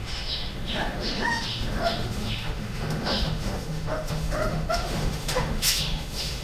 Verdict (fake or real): fake